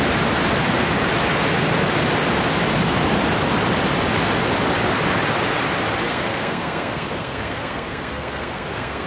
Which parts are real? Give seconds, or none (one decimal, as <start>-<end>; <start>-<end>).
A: 0.0-6.1